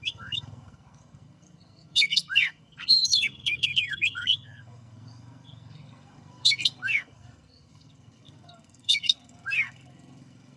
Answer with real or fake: fake